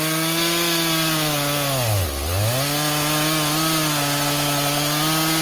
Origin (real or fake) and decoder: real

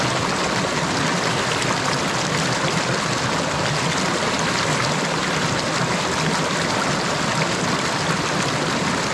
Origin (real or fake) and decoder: real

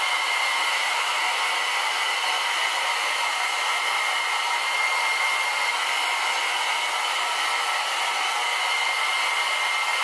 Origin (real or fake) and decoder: real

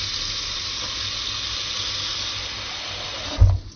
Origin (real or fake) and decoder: real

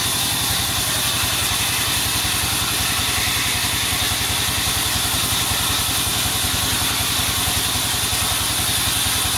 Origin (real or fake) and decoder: real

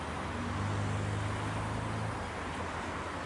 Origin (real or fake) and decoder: real